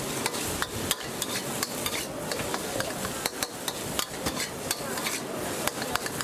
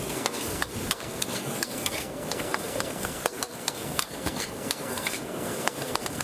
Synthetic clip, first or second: second